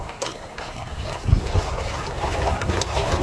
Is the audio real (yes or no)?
no